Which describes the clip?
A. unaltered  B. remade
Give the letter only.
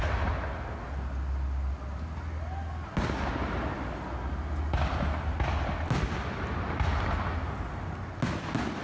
A